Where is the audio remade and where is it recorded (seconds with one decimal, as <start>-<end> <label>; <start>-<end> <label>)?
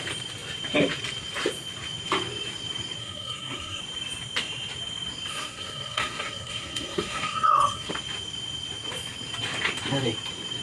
0.0-3.0 recorded; 3.0-3.8 remade; 3.8-5.3 recorded; 5.3-7.9 remade; 7.9-10.6 recorded